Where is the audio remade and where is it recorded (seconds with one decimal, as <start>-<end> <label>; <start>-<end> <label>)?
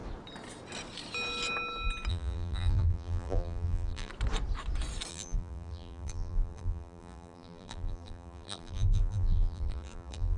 0.0-2.1 recorded; 2.1-4.1 remade; 4.1-5.1 recorded; 5.1-10.4 remade